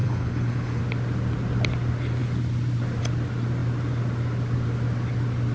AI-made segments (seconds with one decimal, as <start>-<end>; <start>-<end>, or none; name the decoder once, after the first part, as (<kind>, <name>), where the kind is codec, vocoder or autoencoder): 0.0-0.8 (codec, HILCodec)